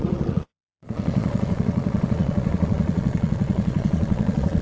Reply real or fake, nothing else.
fake